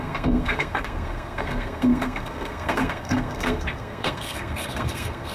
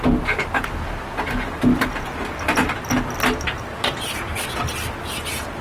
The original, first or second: second